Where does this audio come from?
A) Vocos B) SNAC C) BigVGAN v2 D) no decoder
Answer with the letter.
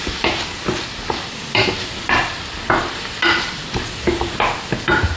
D